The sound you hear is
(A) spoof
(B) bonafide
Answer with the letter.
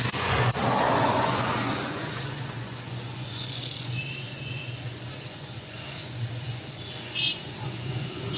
A